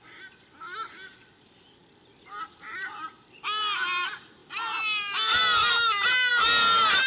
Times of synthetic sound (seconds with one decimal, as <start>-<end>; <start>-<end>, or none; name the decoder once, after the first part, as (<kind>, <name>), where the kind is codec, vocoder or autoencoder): none